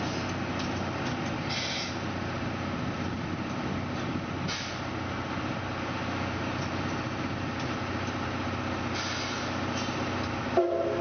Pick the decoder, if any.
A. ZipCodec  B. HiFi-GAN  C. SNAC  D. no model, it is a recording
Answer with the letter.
D